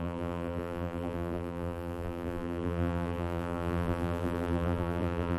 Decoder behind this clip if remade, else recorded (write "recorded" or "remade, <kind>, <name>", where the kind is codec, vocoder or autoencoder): remade, vocoder, BigVGAN v2